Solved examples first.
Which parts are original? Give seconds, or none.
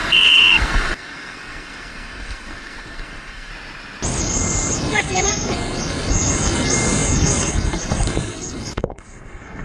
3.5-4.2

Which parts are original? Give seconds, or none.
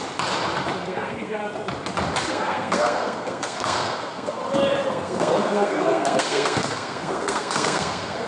0.0-0.8; 1.4-2.3; 4.4-4.9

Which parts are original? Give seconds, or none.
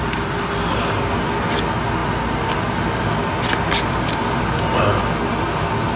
0.0-6.0